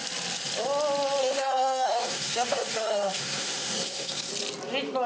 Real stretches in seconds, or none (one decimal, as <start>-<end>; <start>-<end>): 0.0-1.2; 4.3-5.1